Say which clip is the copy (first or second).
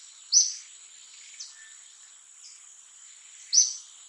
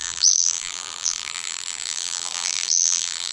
second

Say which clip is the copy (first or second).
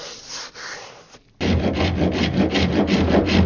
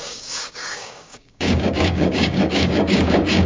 second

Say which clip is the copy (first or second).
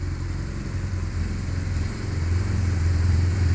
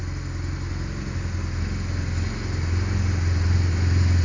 first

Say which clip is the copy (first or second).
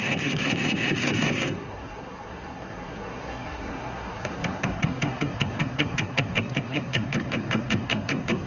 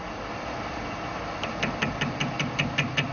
first